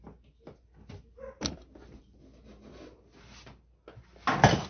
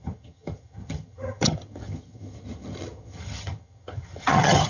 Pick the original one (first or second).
first